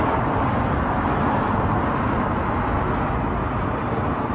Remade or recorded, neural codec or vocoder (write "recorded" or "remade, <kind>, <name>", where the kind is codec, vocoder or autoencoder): recorded